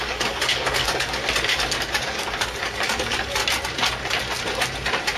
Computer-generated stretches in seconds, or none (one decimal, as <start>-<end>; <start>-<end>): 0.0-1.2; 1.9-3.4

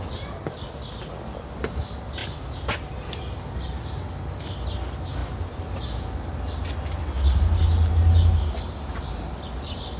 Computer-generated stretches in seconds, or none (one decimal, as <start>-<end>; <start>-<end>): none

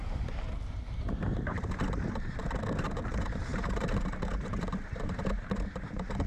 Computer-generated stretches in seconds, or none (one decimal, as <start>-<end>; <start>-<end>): 0.0-6.3

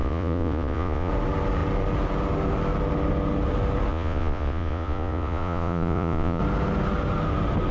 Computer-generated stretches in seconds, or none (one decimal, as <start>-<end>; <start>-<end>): 0.0-1.1; 3.9-6.4

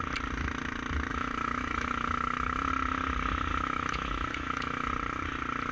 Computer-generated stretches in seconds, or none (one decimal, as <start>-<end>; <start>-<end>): 1.1-2.7; 3.5-4.9